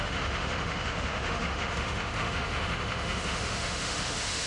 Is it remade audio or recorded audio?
remade